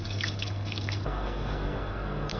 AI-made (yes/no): yes